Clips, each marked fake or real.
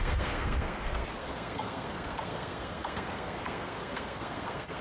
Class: fake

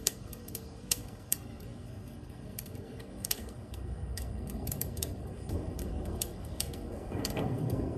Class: fake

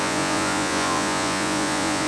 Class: fake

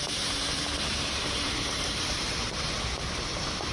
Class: fake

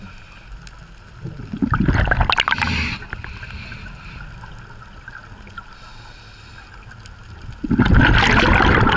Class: real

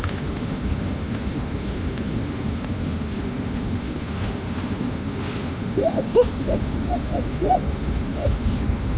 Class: fake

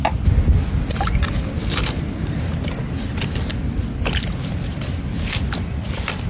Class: real